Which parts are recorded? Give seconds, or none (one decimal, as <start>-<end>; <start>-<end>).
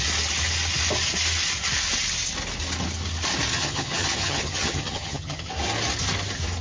0.0-3.5; 5.5-6.6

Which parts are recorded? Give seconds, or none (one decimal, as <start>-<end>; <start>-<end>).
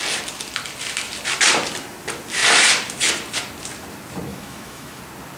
0.0-4.3; 5.0-5.4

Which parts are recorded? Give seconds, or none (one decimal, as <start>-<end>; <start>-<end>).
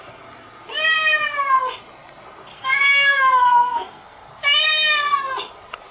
0.0-2.5; 4.3-5.9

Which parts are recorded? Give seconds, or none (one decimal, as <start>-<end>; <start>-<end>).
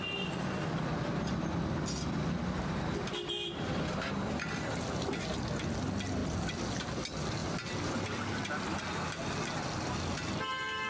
0.0-6.2; 6.7-7.4; 8.8-10.9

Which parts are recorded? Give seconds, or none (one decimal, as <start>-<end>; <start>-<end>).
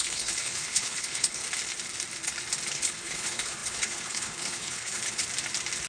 1.4-2.7; 5.2-5.9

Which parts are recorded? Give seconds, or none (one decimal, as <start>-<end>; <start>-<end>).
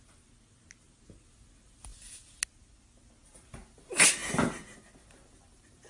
0.0-5.9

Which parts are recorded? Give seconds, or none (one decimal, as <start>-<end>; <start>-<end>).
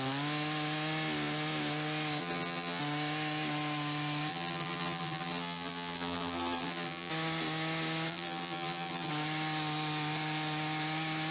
0.0-2.2; 2.8-4.3; 7.1-8.1; 9.1-11.3